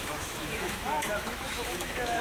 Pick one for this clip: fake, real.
fake